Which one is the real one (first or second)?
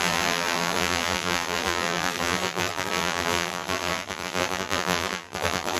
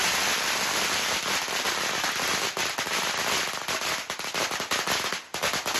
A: second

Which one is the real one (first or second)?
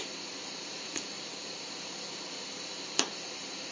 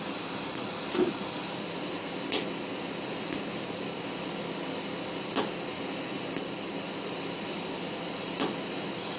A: second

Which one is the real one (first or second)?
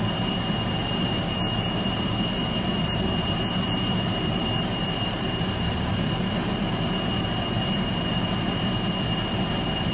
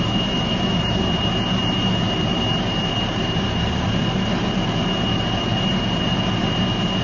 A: second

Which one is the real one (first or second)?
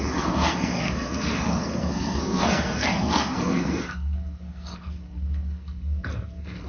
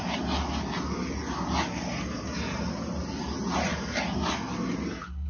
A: second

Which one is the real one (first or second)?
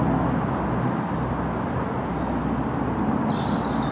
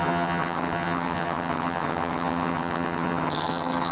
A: first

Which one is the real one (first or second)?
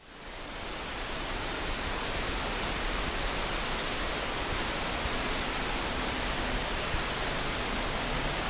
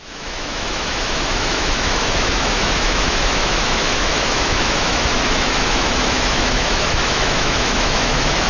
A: first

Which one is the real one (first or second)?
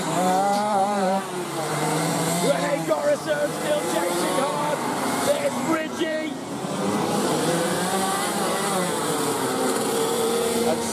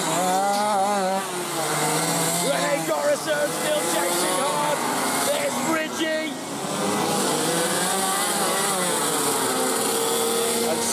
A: second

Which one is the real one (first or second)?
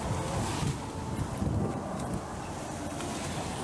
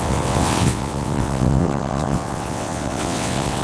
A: first